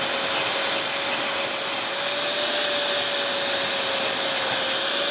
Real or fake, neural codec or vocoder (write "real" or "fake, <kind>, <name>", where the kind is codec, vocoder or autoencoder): real